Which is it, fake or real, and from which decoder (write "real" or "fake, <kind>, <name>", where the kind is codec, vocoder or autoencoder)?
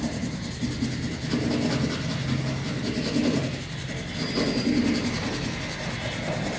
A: real